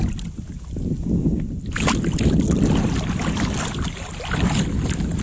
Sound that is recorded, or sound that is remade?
recorded